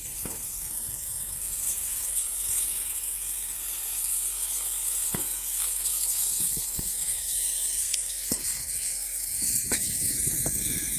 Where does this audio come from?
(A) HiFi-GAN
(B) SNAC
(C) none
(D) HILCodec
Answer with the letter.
B